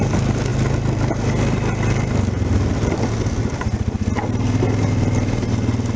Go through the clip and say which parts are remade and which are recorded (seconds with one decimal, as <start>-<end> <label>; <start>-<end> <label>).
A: 0.0-6.0 recorded